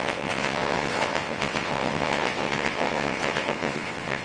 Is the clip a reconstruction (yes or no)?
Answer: yes